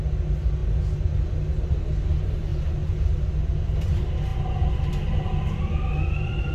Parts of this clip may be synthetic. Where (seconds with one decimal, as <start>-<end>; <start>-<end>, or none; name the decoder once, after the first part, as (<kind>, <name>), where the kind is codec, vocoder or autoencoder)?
none